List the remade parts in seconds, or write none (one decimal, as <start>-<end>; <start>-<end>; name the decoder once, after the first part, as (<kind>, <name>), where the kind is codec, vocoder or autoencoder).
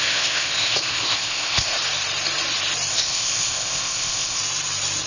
0.0-1.7 (codec, ZipCodec); 2.9-4.4